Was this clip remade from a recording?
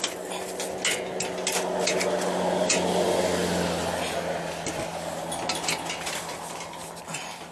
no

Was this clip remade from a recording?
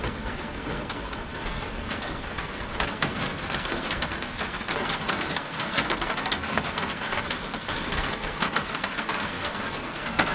yes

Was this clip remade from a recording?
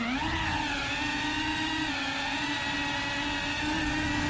no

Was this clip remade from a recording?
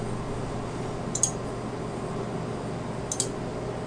no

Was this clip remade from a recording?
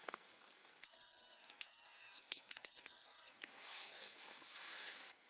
yes